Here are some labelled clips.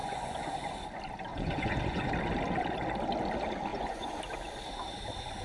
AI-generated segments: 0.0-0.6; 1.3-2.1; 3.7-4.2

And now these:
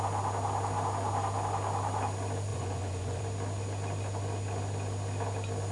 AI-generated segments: 2.5-3.2

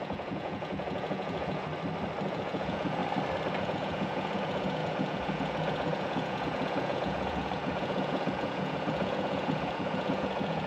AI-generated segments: 0.0-1.7; 2.3-3.0; 3.6-10.7

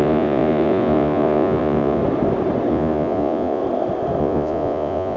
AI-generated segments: 0.0-2.0; 2.7-3.6; 4.2-5.2